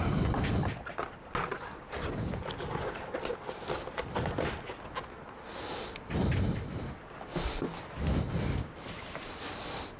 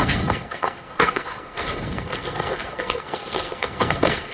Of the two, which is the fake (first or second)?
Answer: second